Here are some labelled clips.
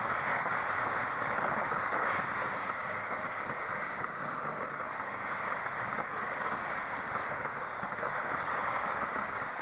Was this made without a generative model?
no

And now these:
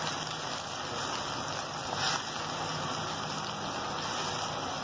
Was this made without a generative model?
yes